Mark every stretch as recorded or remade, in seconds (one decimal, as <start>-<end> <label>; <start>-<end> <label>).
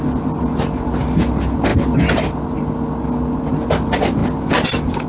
0.0-5.1 recorded